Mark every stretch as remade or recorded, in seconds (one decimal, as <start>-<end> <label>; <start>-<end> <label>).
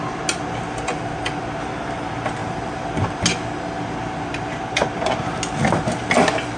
0.0-6.6 recorded